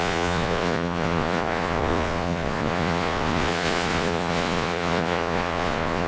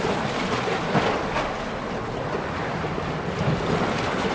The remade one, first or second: first